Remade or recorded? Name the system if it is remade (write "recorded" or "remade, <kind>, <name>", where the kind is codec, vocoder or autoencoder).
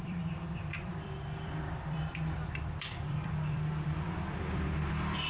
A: remade, vocoder, BigVGAN v2